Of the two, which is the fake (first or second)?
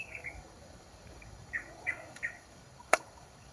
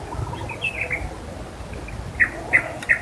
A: first